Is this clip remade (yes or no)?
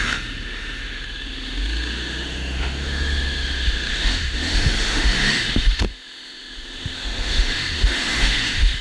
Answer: yes